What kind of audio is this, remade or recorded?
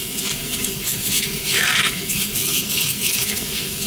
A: remade